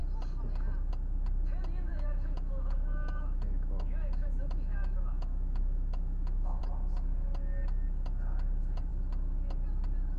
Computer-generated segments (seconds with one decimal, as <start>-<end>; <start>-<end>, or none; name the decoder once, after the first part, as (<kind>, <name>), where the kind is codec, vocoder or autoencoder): 1.9-6.6 (autoencoder, DAC-VAE)